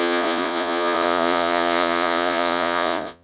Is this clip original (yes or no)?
no